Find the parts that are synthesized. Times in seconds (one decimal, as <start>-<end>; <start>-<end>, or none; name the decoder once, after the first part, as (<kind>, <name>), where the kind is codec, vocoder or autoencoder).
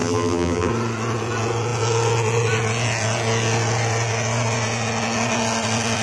0.0-0.7 (vocoder, BigVGAN v2)